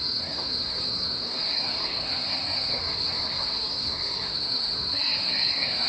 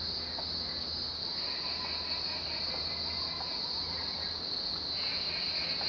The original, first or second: second